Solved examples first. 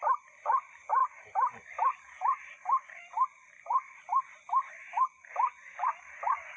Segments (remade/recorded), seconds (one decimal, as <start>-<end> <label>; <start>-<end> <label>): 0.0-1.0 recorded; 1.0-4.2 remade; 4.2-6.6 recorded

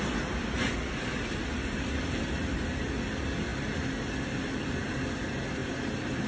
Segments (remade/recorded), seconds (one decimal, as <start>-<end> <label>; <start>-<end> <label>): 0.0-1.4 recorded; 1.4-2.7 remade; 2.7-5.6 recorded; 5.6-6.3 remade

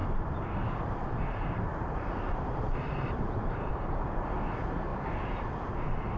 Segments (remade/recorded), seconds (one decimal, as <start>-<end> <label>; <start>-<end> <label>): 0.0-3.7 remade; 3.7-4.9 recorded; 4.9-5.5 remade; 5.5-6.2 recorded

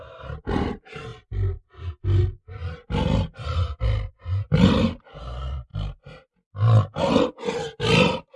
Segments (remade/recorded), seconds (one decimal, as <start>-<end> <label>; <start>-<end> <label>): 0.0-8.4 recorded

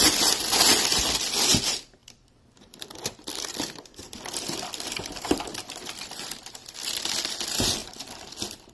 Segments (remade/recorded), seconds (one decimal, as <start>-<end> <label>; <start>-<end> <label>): 0.0-2.0 recorded; 2.0-7.0 remade; 7.0-7.8 recorded; 7.8-8.7 remade

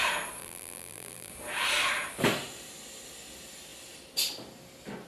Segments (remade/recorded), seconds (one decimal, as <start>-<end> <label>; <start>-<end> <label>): 0.0-0.4 recorded; 0.4-1.3 remade; 1.3-5.1 recorded

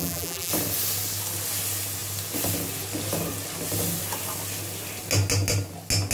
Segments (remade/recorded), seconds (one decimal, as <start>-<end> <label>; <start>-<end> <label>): 0.0-0.5 remade; 0.5-6.1 recorded

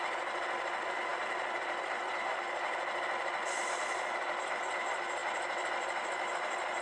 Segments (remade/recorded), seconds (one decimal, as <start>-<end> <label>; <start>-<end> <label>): 0.0-6.8 recorded